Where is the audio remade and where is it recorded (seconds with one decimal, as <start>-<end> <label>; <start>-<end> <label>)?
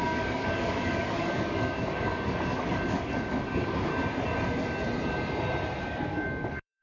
0.0-3.9 remade; 3.9-5.8 recorded; 5.8-6.8 remade